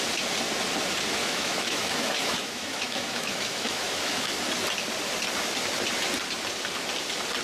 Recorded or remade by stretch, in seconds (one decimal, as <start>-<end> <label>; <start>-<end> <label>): 0.0-1.2 recorded; 1.2-4.4 remade; 4.4-7.4 recorded